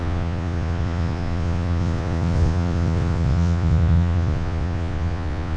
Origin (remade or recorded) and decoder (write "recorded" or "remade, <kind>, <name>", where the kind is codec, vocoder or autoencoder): remade, vocoder, Vocos